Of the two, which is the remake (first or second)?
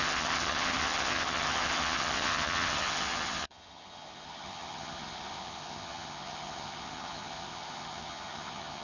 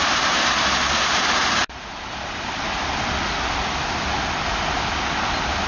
first